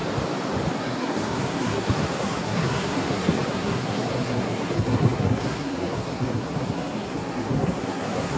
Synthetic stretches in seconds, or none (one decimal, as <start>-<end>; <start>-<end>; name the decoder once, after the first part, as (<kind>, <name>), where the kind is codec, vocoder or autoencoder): 0.7-8.4 (codec, SNAC)